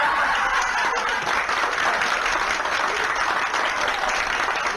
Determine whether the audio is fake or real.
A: real